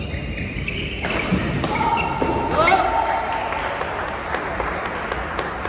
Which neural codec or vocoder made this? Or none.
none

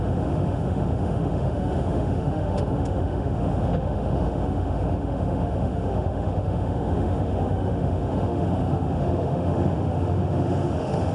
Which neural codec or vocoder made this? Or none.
autoencoder, DAC-VAE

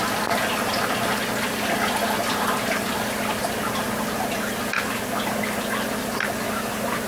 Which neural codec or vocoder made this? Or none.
none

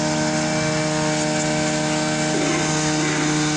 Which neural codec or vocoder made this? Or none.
none